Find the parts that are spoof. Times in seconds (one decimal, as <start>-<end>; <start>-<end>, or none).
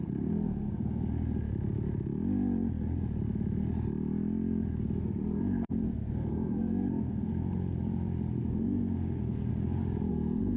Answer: 0.0-1.0; 5.0-7.4; 8.3-9.5; 10.1-10.6